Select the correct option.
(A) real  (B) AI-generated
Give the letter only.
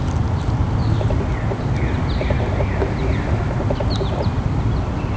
A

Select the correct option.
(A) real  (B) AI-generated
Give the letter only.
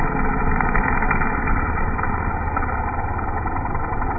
A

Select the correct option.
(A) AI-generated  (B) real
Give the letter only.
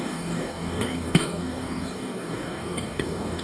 A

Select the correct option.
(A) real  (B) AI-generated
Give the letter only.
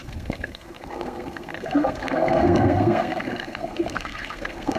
B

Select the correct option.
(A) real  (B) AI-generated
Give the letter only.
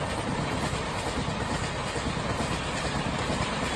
A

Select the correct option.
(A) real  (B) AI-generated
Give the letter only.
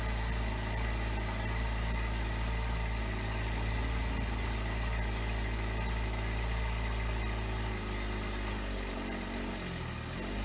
A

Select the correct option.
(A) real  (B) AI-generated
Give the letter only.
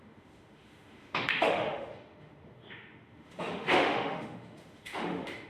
B